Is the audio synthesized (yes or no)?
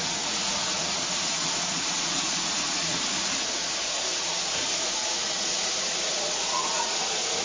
yes